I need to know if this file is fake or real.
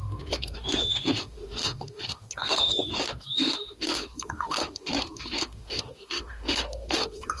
fake